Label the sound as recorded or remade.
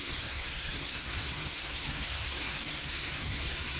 remade